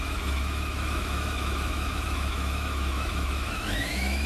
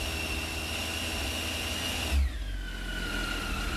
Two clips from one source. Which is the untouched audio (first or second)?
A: second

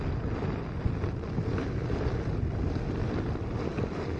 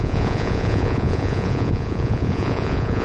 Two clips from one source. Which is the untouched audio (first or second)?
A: first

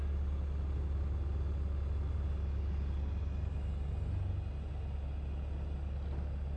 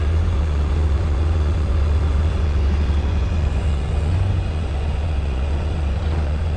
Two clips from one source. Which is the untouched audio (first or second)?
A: first